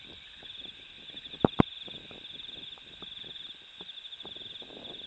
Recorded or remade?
recorded